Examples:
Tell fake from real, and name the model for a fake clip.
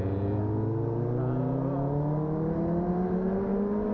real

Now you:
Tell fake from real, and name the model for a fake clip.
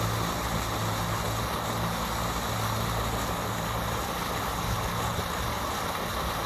real